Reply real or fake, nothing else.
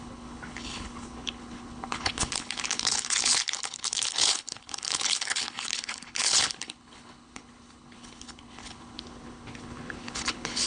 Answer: fake